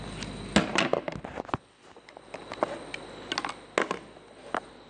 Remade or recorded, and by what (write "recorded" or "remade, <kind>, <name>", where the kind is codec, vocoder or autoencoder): recorded